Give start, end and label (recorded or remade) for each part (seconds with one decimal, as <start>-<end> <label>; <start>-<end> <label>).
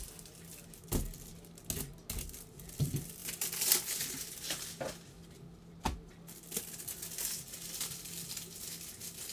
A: 0.0-9.3 recorded